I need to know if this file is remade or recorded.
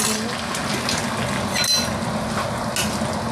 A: recorded